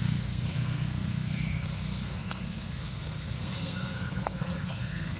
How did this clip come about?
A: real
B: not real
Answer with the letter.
B